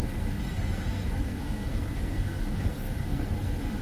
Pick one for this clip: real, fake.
fake